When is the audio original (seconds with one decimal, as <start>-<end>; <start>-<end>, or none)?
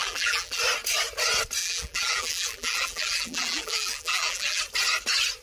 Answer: 0.6-1.6; 4.6-5.4